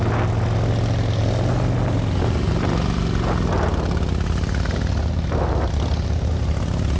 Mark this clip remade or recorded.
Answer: recorded